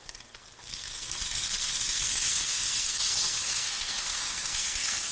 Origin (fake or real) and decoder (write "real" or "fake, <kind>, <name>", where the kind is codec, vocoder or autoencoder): fake, codec, SNAC